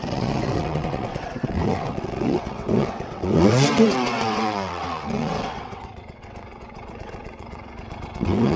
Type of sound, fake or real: fake